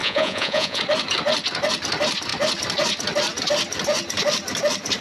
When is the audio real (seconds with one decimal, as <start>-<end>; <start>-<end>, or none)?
0.8-5.0